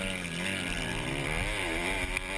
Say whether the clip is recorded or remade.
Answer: recorded